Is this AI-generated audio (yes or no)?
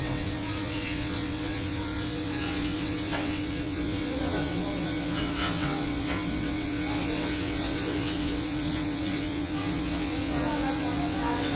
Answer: yes